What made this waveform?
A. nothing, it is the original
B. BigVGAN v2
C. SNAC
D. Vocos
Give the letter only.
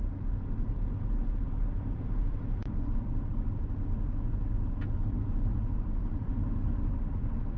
A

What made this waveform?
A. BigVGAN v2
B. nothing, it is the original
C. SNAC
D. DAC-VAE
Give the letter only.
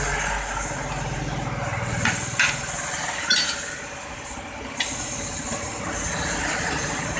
B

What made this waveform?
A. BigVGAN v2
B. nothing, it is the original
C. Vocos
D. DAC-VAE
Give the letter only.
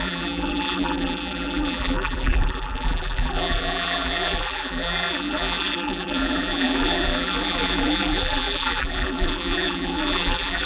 A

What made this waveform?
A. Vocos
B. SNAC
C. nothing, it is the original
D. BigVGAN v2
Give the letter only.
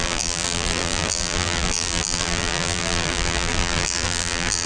D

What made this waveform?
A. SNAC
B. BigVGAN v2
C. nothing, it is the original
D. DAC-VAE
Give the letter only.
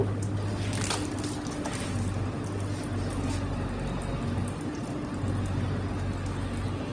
C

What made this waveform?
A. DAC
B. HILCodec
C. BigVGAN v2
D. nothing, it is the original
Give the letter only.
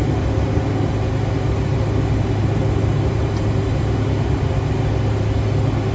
D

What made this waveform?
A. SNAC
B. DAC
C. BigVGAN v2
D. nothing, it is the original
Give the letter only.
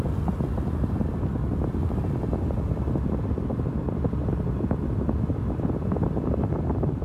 C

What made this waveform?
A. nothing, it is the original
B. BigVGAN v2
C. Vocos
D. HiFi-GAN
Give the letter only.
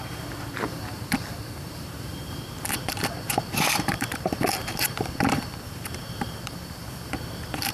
B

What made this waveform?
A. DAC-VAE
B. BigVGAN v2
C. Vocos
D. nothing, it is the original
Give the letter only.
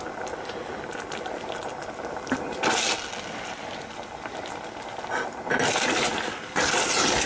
D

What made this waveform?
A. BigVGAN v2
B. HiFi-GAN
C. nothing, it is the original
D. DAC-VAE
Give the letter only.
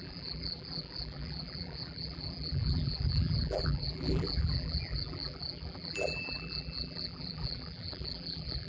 A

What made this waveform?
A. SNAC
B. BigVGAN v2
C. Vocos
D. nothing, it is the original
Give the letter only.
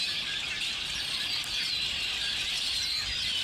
D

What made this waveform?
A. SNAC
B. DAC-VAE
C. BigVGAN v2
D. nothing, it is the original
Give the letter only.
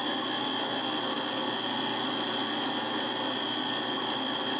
D